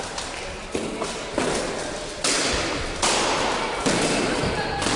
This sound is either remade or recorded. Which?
recorded